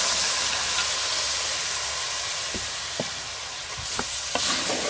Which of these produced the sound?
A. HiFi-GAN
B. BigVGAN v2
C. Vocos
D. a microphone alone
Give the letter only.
D